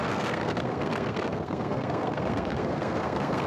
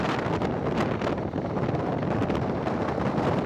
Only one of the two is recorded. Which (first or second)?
second